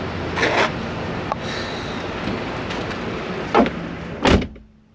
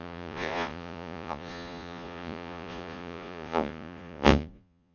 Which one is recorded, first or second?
first